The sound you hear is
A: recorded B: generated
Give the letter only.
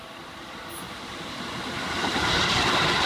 A